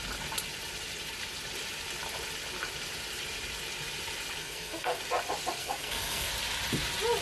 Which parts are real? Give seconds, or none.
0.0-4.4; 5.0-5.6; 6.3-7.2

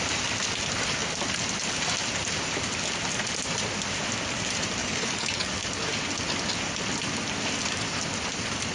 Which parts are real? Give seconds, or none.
0.0-4.8; 5.5-8.7

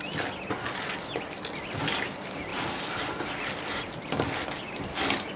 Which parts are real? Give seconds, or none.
0.0-5.4

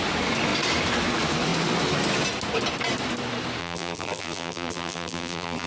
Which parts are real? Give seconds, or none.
0.0-3.6

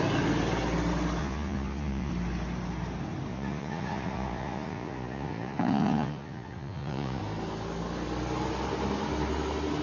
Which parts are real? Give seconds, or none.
0.0-1.2; 2.1-3.3; 7.2-9.8

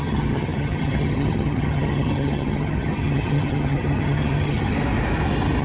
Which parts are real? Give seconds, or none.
4.7-5.6

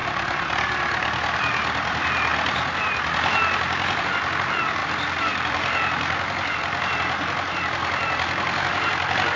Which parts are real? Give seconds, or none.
0.5-4.8

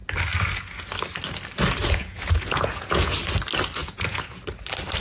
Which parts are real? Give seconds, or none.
0.0-1.8; 3.1-3.8; 4.4-5.0